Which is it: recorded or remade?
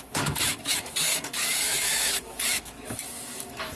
remade